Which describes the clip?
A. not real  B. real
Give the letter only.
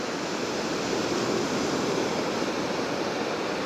B